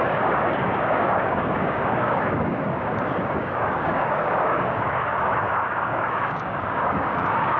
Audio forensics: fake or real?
fake